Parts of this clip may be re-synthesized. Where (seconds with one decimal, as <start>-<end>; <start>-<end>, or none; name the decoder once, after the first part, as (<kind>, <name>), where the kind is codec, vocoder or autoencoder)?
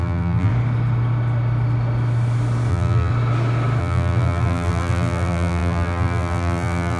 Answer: 0.0-0.5 (vocoder, BigVGAN v2); 2.7-3.1; 3.8-7.0